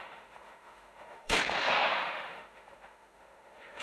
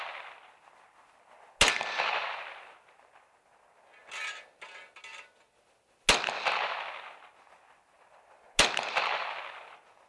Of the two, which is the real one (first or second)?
second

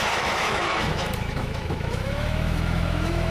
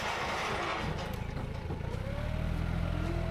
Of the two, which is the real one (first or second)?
second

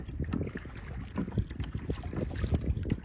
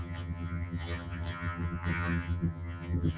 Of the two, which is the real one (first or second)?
first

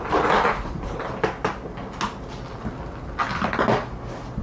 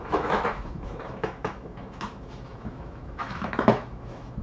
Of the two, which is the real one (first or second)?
first